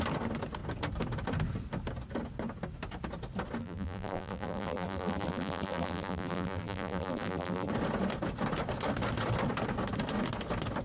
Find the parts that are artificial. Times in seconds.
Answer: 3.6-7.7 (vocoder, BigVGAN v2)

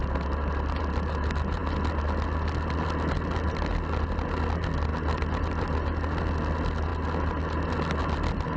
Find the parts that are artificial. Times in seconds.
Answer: none